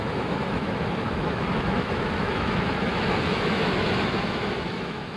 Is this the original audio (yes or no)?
no